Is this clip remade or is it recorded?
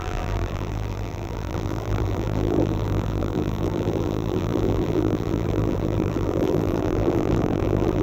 remade